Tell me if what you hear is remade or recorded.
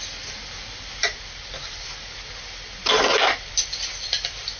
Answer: recorded